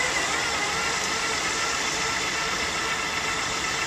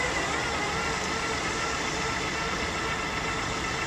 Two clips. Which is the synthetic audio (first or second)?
first